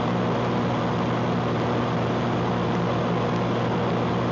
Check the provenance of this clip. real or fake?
real